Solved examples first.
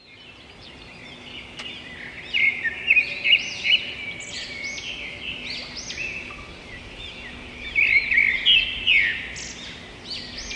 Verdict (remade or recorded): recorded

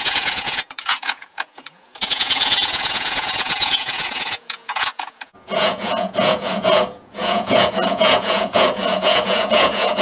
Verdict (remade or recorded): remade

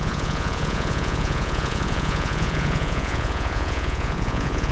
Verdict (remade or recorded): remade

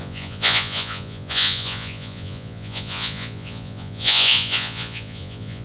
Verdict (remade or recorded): remade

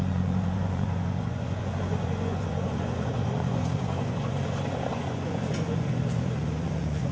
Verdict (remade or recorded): remade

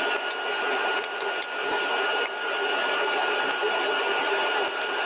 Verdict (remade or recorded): recorded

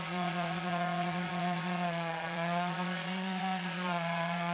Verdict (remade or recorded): remade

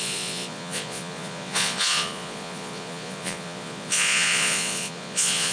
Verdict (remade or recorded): remade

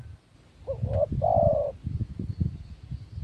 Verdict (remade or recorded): recorded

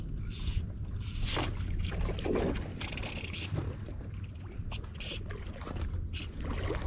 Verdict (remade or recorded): recorded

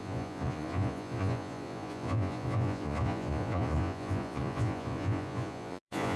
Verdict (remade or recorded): remade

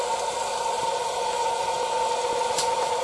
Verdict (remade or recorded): recorded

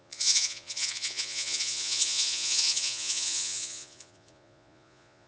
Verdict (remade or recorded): remade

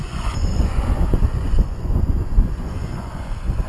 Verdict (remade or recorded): remade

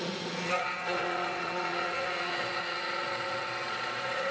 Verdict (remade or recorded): remade